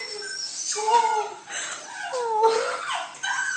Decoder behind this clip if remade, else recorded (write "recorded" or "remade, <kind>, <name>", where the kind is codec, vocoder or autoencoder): recorded